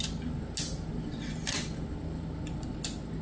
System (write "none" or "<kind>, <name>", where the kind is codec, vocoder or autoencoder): none